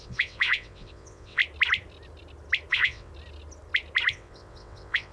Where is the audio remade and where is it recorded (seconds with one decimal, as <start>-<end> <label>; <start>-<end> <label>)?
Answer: 0.0-1.4 remade; 1.4-2.7 recorded; 2.7-3.1 remade; 3.1-4.1 recorded; 4.1-5.1 remade